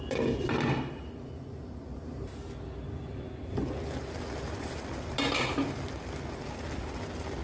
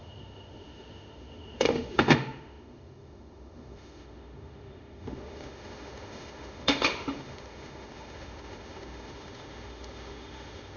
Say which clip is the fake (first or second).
second